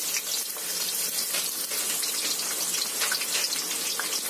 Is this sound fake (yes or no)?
no